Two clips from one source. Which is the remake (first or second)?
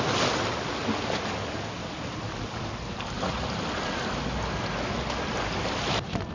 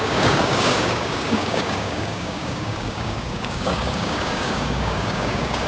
second